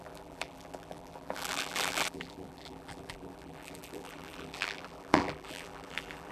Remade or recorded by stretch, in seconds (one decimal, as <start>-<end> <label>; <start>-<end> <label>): 0.0-6.3 remade